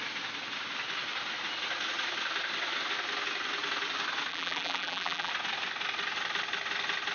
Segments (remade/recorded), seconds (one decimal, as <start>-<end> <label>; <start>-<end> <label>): 0.0-4.3 recorded; 4.3-5.3 remade; 5.3-7.1 recorded